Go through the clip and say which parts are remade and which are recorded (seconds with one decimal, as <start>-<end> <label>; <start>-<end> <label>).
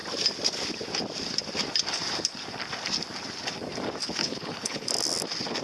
0.0-4.2 recorded; 4.2-4.9 remade; 4.9-5.6 recorded